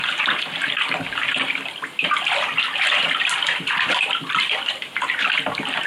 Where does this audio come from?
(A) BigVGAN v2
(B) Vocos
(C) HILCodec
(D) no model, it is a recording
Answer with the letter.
A